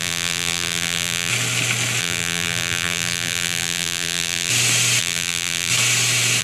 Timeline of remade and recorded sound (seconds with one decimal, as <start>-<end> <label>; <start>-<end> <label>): 0.0-1.3 remade; 1.3-2.0 recorded; 2.0-4.5 remade; 4.5-5.0 recorded; 5.0-5.7 remade; 5.7-6.4 recorded